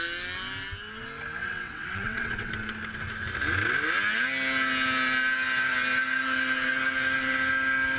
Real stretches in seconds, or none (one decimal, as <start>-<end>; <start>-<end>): 0.0-1.4; 2.5-8.0